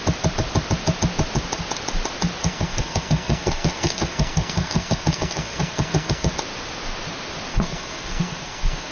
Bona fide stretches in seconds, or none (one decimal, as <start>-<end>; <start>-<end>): 0.0-2.4; 6.3-7.5